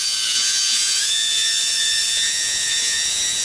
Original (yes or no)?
no